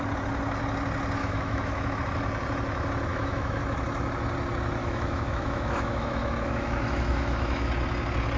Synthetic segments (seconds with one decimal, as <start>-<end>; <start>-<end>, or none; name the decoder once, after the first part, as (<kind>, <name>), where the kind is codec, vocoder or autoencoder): 1.2-2.0 (autoencoder, DAC-VAE); 3.1-3.6; 4.8-7.7